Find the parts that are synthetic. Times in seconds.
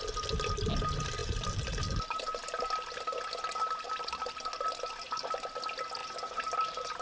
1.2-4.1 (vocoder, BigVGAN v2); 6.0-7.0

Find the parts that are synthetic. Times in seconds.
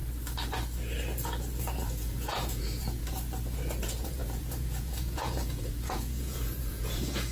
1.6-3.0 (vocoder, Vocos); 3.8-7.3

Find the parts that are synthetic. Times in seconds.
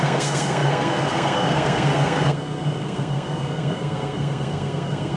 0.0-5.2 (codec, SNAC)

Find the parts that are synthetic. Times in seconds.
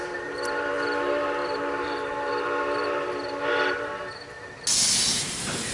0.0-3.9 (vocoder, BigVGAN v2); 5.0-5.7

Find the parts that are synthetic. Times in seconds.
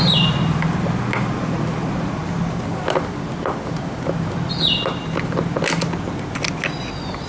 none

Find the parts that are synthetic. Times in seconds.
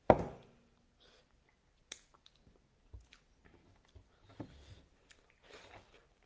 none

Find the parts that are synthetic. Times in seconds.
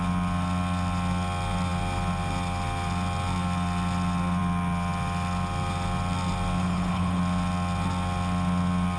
6.6-7.2 (codec, HILCodec)